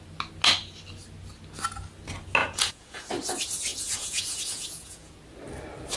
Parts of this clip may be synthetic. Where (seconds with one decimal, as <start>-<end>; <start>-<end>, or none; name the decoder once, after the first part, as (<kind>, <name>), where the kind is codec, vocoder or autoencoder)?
2.4-3.1 (vocoder, Vocos); 3.7-5.1